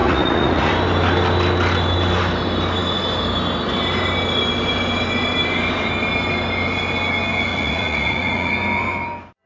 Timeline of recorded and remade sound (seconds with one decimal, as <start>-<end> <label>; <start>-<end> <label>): 0.0-0.7 remade; 0.7-7.5 recorded; 7.5-8.5 remade; 8.5-9.5 recorded